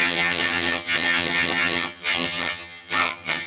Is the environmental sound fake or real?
fake